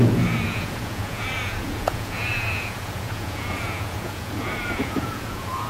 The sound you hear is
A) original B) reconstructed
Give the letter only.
B